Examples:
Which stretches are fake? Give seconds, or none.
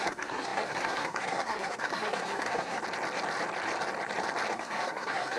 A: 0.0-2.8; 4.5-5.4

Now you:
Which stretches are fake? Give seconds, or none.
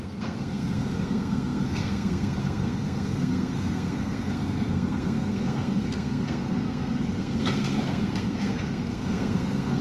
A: 0.0-9.8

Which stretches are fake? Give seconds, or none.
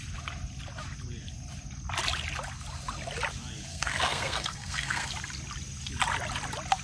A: 3.7-5.1